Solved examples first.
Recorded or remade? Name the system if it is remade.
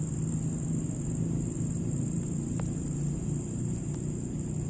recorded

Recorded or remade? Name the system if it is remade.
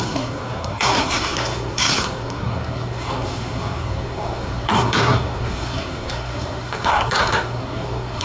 remade, codec, SNAC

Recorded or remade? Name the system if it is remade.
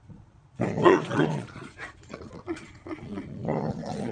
remade, vocoder, Vocos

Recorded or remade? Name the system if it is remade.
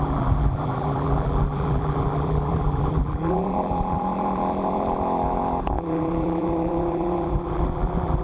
remade, vocoder, BigVGAN v2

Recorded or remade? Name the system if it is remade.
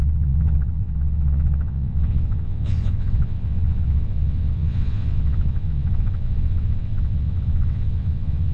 remade, vocoder, WaveNeXt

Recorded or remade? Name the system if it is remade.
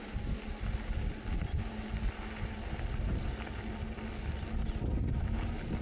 recorded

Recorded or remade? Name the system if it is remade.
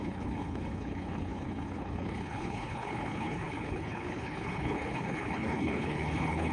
remade, codec, HILCodec